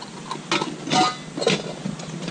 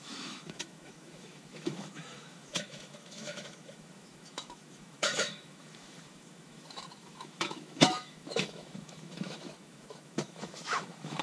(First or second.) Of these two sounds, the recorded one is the first